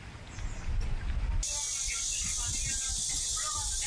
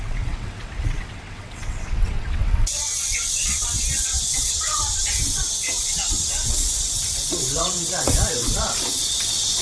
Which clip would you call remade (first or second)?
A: second